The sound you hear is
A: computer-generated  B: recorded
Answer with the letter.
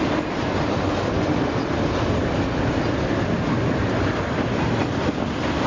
B